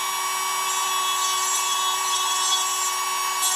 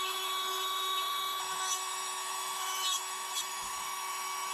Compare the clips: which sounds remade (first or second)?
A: second